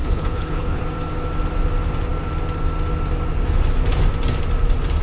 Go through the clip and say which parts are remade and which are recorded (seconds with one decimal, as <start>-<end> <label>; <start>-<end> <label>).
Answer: 0.0-0.8 remade; 0.8-5.0 recorded

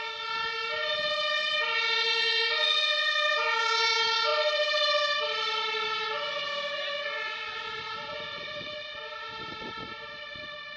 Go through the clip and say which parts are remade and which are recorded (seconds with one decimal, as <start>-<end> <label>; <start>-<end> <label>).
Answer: 0.0-4.3 recorded; 4.3-5.9 remade; 5.9-10.8 recorded

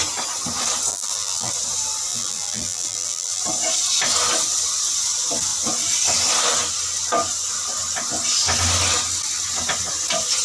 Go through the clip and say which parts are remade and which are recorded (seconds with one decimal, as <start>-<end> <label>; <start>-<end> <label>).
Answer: 0.0-0.9 recorded; 0.9-1.5 remade; 1.5-2.1 recorded; 2.1-3.4 remade; 3.4-10.4 recorded